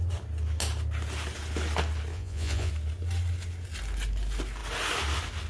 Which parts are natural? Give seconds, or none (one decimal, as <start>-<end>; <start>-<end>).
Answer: 0.0-2.1; 2.7-5.5